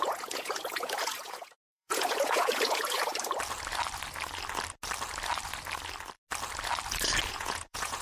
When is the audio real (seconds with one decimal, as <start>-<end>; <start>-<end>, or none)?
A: 3.1-7.3